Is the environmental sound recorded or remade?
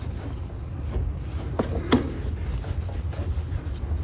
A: recorded